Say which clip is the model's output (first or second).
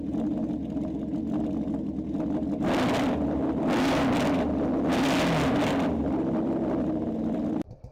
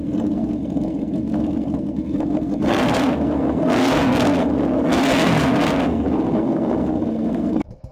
second